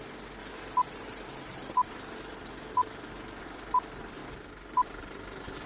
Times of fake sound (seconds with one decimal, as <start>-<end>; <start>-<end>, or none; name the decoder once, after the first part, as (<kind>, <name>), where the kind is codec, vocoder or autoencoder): none